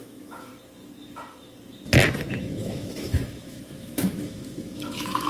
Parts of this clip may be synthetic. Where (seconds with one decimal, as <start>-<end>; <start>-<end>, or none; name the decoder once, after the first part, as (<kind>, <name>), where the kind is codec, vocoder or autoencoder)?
0.0-0.5 (autoencoder, DAC-VAE); 2.4-5.3